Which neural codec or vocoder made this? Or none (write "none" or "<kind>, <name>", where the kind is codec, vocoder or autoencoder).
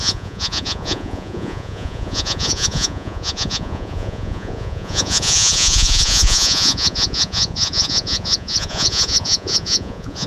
vocoder, Vocos